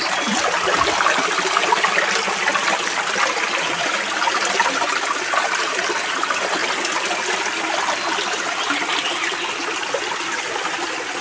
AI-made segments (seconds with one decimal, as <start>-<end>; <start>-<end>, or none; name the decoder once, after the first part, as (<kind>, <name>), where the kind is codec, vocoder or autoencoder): none